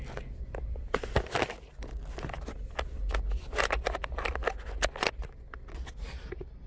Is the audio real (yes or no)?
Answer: yes